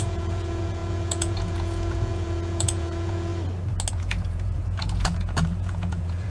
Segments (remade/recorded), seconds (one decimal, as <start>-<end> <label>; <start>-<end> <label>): 0.0-3.3 remade; 3.3-3.9 recorded; 3.9-6.3 remade

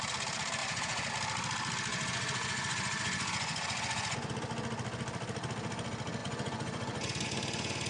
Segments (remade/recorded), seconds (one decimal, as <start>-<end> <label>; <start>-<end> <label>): 0.0-0.6 recorded; 0.6-1.1 remade; 1.1-1.9 recorded; 1.9-4.3 remade; 4.3-6.2 recorded; 6.2-7.9 remade